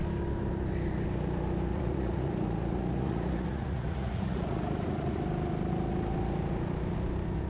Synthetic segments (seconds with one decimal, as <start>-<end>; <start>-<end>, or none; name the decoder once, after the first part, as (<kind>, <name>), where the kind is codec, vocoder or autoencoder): 1.7-5.2 (vocoder, Vocos)